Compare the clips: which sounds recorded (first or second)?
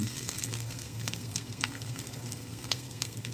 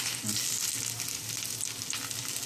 second